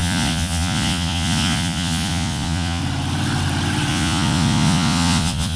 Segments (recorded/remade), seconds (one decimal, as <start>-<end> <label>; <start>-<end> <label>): 0.0-2.8 remade; 2.8-3.9 recorded; 3.9-5.6 remade